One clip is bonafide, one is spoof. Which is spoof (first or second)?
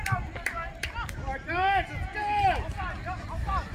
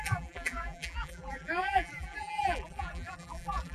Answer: second